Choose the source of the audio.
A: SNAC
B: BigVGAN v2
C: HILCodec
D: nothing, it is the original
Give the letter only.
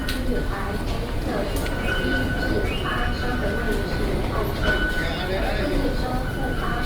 D